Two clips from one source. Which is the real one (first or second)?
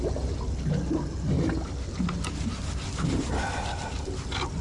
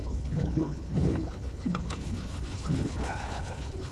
first